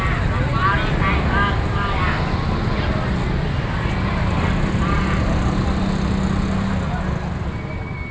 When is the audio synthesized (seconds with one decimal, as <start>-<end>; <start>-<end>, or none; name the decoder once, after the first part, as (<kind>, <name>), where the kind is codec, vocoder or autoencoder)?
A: none